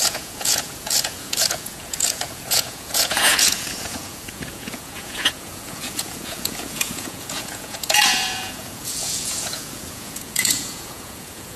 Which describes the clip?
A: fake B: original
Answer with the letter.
A